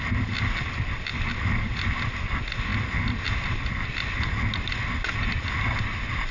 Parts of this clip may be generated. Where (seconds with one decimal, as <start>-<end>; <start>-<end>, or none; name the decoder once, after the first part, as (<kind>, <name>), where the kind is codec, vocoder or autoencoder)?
none